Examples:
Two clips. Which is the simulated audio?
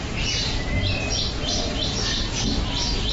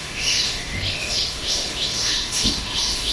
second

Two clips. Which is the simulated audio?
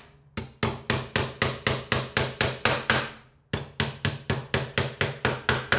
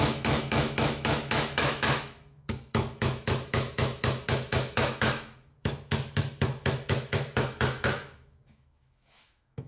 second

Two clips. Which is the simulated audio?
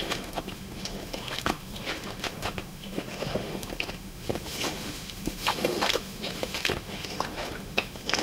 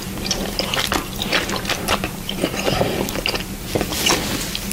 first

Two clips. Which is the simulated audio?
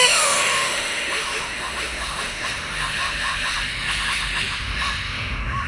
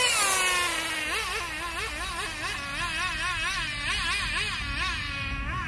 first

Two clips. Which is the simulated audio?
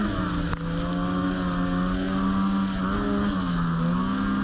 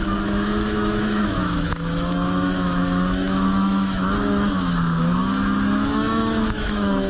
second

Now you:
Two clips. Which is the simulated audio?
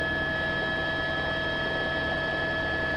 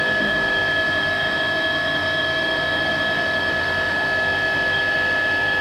second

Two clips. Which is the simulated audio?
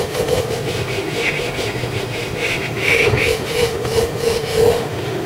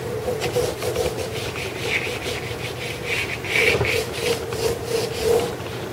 first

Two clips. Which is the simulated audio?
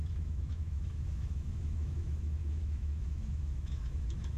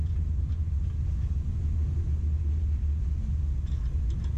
first